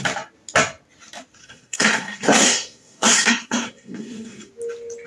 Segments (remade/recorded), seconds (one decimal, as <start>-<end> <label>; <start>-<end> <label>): 0.0-1.4 recorded; 1.4-4.5 remade; 4.5-5.1 recorded